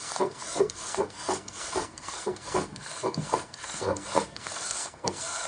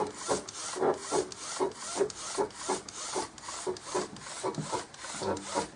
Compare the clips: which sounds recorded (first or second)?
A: second